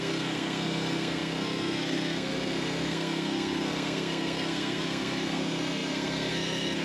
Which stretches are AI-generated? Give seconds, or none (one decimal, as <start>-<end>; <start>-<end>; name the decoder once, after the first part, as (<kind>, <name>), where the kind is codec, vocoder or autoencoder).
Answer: 0.0-6.8 (codec, SNAC)